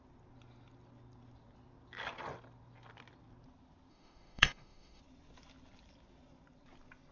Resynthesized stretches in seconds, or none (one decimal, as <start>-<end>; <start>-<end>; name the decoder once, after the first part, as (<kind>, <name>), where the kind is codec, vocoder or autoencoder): 3.9-5.0 (autoencoder, DAC-VAE)